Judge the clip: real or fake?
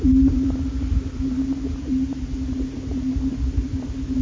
real